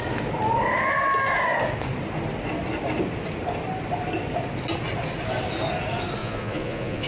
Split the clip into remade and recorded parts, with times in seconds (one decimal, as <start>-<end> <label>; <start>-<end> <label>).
0.0-6.2 recorded; 6.2-7.1 remade